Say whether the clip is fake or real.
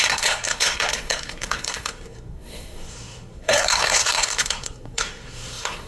fake